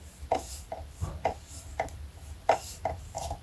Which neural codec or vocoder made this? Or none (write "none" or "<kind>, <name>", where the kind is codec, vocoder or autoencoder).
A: none